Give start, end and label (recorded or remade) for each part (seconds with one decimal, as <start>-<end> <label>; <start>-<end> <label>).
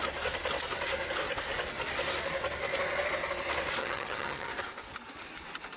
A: 0.0-3.8 recorded; 3.8-4.5 remade; 4.5-5.8 recorded